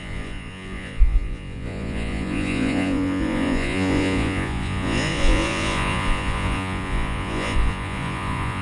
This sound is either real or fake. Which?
fake